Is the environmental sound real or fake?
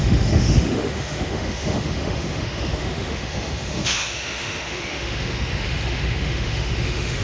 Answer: fake